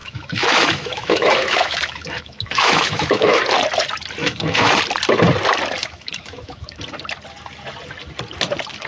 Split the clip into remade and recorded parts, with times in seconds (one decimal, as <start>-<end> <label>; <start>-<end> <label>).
0.0-3.4 remade; 3.4-4.2 recorded; 4.2-4.8 remade; 4.8-5.8 recorded; 5.8-6.8 remade; 6.8-8.9 recorded